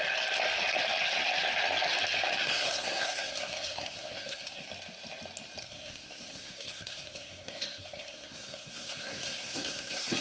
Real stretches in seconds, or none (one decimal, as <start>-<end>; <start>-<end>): 0.0-2.3; 4.7-5.6